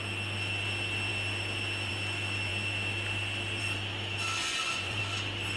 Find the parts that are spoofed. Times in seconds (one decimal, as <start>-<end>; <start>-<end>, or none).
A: 4.4-5.0